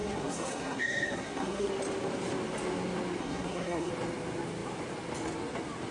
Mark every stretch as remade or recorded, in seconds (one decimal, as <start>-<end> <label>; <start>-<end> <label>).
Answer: 0.0-1.7 remade; 1.7-3.2 recorded; 3.2-3.9 remade; 3.9-5.9 recorded